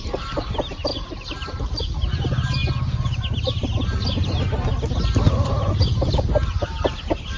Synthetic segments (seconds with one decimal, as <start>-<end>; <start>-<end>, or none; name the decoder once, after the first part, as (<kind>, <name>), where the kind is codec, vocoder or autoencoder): 0.0-2.6 (vocoder, BigVGAN v2); 6.1-7.4